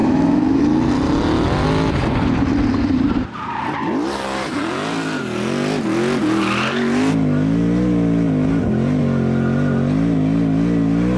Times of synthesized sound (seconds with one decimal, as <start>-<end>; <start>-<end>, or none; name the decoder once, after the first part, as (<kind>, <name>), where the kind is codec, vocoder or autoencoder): 0.0-0.6 (autoencoder, DAC-VAE)